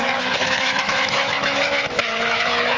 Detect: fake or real fake